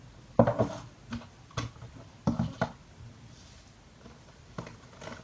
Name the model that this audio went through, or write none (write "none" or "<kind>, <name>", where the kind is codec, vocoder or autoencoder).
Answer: none